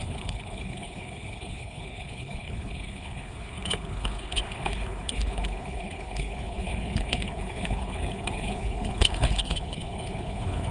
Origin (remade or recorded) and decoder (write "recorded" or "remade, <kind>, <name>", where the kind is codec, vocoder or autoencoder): remade, codec, HILCodec